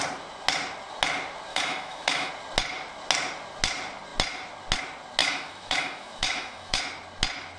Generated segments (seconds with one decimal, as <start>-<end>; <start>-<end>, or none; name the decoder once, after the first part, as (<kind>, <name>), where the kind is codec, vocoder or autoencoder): 1.5-2.3 (autoencoder, DAC-VAE); 5.2-6.8